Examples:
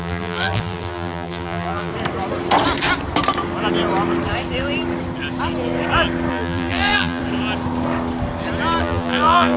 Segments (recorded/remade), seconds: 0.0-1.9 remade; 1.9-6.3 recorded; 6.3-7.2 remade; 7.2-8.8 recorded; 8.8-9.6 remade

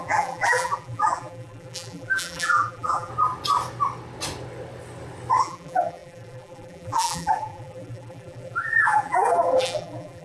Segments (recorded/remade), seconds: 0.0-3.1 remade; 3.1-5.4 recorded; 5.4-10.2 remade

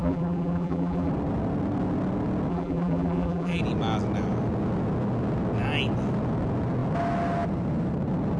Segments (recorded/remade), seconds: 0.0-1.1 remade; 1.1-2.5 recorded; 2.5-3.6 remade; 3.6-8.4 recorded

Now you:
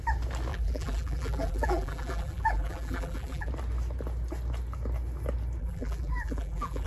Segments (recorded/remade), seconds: 0.0-0.5 recorded; 0.5-3.5 remade; 3.5-5.6 recorded; 5.6-6.9 remade

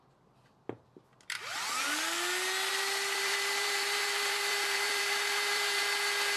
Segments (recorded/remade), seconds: 0.0-2.7 recorded; 2.7-5.8 remade; 5.8-6.4 recorded